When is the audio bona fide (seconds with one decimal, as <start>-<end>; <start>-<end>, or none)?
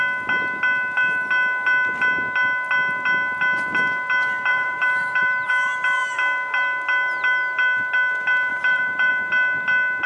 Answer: 0.0-4.5; 5.5-8.5; 9.1-10.1